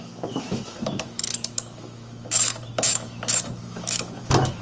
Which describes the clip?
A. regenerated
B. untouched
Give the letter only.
A